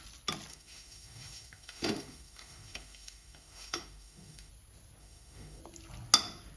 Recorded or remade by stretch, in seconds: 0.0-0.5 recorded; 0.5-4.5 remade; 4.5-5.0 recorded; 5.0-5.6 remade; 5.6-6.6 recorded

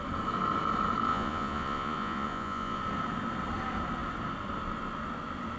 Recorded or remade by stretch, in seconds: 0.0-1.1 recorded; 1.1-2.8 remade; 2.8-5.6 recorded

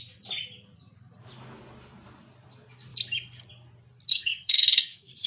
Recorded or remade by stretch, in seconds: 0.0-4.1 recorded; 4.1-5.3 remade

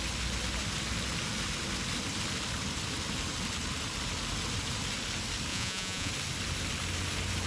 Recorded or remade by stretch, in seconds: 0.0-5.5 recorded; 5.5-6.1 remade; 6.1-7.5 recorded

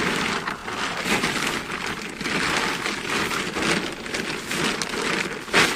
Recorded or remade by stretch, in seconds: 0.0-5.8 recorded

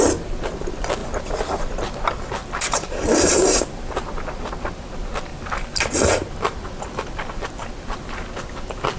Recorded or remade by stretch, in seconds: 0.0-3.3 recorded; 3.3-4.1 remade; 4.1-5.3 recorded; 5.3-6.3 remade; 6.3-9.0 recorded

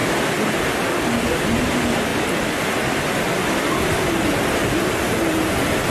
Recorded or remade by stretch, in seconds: 0.0-5.9 recorded

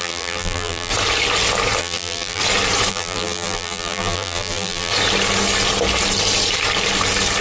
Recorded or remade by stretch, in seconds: 0.0-0.9 remade; 0.9-1.8 recorded; 1.8-2.4 remade; 2.4-2.9 recorded; 2.9-4.9 remade; 4.9-7.4 recorded